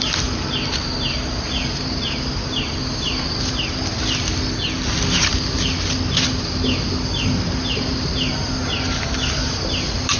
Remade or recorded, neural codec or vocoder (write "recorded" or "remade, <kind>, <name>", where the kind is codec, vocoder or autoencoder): recorded